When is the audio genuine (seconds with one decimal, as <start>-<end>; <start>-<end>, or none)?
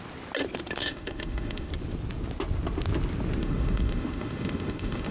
0.0-0.8; 1.7-3.4